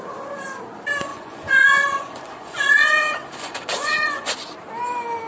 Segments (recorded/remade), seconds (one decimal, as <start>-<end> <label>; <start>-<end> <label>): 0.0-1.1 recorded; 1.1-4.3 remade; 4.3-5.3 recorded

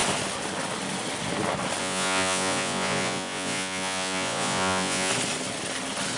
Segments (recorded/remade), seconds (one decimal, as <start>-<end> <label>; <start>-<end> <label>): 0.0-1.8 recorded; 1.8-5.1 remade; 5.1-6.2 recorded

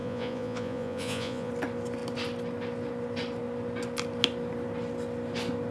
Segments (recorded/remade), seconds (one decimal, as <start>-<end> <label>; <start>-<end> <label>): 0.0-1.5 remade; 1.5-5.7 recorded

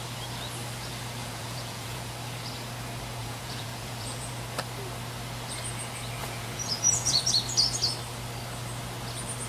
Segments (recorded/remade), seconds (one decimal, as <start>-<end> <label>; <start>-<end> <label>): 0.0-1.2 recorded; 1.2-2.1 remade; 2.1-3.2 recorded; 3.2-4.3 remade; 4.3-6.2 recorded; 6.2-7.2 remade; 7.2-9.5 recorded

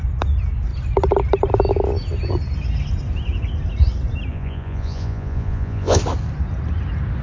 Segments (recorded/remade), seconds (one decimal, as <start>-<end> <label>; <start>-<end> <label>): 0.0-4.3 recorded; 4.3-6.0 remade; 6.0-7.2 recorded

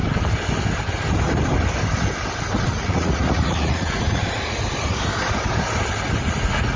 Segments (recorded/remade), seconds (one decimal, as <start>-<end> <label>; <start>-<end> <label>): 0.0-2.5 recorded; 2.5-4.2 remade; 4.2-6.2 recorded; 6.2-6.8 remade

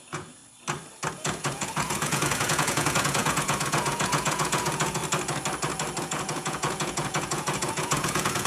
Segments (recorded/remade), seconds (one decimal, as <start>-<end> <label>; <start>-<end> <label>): 0.0-0.4 remade; 0.4-1.1 recorded; 1.1-5.0 remade; 5.0-6.0 recorded; 6.0-8.5 remade